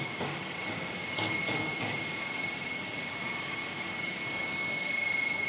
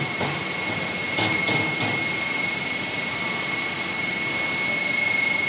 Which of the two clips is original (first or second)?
second